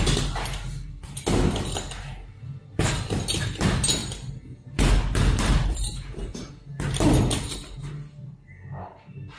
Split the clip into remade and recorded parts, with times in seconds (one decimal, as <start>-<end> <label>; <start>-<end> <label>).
0.0-9.4 recorded